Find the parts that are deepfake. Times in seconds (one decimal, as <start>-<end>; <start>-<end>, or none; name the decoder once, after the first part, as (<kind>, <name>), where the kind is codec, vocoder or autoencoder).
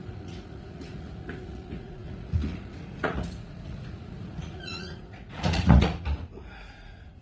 0.0-7.2 (vocoder, Vocos)